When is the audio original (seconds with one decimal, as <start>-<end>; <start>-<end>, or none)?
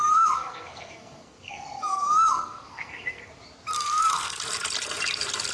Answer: 3.3-3.7; 4.4-5.5